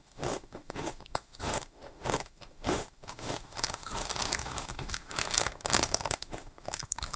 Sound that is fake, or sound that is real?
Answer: fake